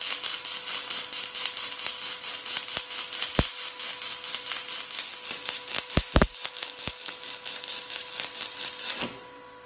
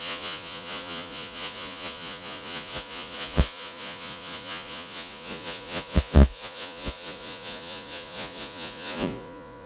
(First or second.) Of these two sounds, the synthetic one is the second